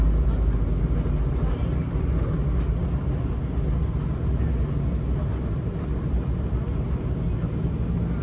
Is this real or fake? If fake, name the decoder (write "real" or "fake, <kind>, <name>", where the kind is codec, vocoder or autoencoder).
real